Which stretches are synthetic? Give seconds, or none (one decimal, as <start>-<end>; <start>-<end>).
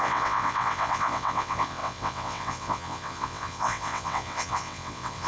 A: 0.0-5.3